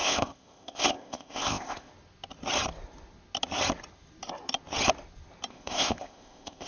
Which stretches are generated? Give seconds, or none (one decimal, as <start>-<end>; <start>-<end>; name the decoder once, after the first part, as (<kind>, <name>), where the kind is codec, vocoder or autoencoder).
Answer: 0.0-1.9 (codec, ZipCodec); 5.5-6.7